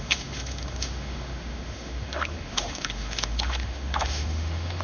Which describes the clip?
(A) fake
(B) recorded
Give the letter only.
A